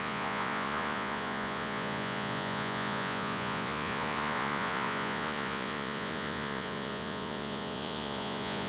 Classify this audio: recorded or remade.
remade